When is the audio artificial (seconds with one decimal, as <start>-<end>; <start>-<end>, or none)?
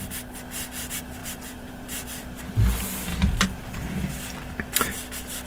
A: 1.2-2.4; 3.1-3.8